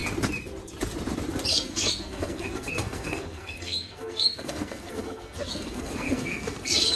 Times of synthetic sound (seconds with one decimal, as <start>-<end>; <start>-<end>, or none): 1.5-7.0